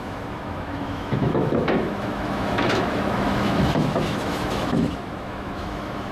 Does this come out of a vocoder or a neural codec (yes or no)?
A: yes